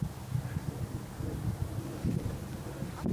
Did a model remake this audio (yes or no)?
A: no